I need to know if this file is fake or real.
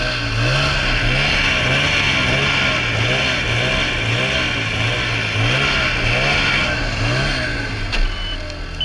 real